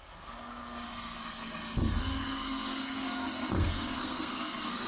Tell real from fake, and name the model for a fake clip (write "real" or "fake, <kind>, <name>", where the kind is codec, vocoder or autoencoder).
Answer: fake, codec, SNAC